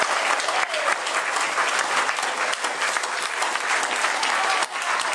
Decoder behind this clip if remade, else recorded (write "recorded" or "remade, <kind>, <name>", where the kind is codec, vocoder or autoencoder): recorded